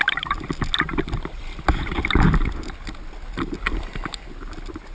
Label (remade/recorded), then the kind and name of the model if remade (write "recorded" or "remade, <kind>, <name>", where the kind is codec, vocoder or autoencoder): recorded